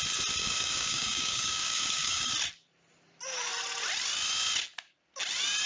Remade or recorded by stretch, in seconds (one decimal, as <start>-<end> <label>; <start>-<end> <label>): 0.0-0.4 recorded; 0.4-2.3 remade; 2.3-5.7 recorded